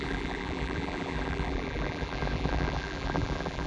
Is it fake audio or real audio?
fake